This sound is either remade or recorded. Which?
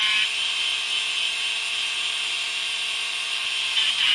remade